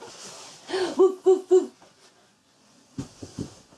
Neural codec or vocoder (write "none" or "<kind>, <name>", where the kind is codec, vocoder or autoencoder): vocoder, Vocos